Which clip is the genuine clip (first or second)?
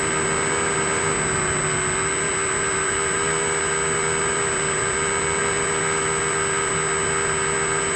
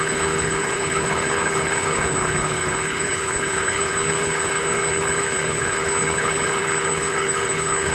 first